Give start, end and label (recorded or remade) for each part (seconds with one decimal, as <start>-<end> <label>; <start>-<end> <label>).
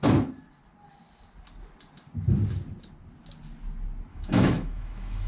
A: 0.0-4.1 recorded; 4.1-5.3 remade